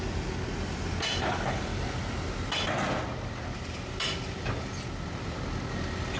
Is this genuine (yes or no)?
yes